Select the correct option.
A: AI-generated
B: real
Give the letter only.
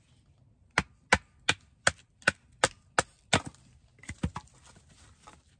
B